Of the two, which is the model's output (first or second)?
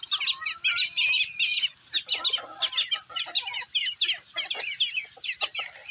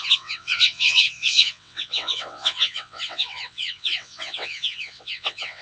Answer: second